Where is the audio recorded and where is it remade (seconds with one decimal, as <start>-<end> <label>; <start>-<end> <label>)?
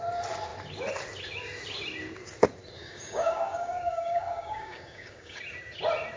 0.0-2.8 recorded; 2.8-5.4 remade; 5.4-6.2 recorded